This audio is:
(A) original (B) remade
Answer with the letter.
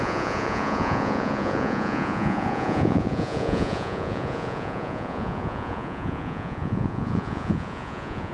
B